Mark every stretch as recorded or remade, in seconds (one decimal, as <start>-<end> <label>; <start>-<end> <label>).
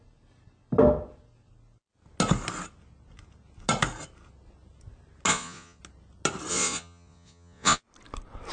0.0-5.3 recorded; 5.3-5.8 remade; 5.8-6.5 recorded; 6.5-7.8 remade; 7.8-8.5 recorded